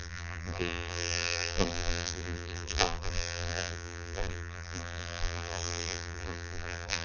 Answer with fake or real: fake